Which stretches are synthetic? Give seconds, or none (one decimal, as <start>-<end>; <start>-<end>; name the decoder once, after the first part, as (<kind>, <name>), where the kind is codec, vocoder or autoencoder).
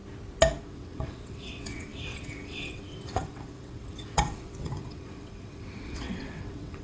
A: 0.6-6.8 (vocoder, WaveNeXt)